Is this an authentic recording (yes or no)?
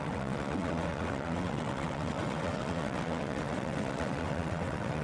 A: no